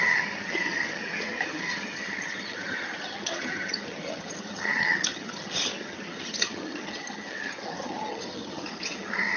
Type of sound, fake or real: fake